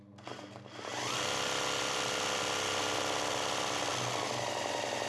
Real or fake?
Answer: real